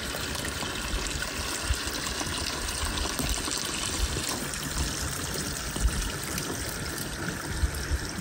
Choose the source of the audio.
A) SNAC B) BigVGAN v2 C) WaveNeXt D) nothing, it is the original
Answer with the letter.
D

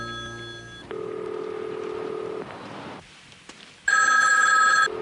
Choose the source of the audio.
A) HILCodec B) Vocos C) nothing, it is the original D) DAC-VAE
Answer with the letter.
C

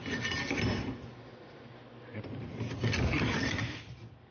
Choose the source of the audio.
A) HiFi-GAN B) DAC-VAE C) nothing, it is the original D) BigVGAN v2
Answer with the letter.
C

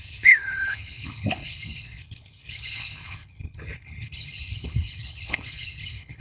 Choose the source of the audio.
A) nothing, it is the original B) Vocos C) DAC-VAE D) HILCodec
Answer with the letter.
D